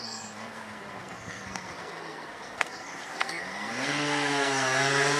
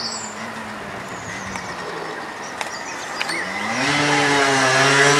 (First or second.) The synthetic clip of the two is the first